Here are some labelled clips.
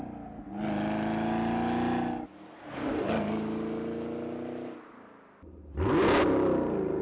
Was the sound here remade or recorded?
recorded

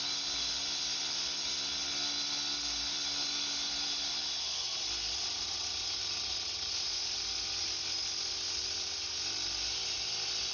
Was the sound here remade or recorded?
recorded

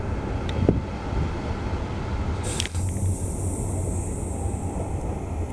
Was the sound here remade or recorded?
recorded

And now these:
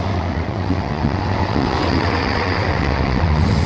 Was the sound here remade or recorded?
remade